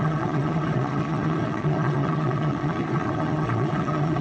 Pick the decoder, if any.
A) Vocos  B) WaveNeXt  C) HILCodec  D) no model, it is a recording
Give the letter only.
A